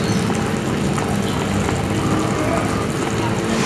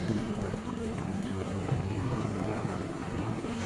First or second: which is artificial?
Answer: second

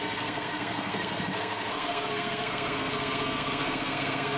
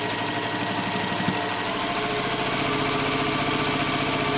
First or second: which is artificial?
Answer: first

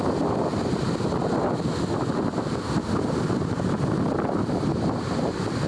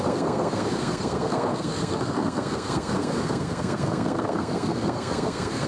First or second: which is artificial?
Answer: second